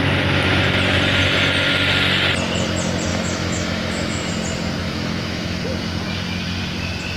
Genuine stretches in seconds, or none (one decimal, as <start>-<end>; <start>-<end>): 0.0-3.1; 4.3-4.8; 5.6-7.2